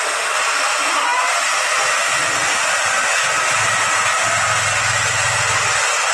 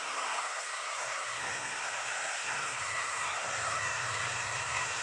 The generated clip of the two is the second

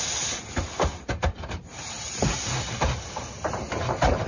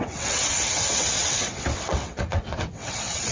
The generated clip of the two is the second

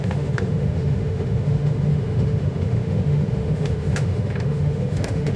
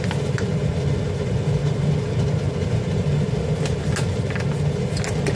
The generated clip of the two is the first